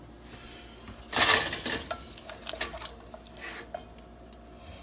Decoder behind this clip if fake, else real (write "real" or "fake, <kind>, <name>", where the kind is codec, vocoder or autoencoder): real